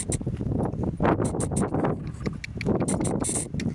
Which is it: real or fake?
real